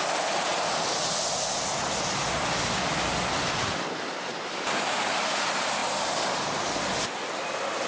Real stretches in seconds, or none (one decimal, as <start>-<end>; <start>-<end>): 0.0-7.9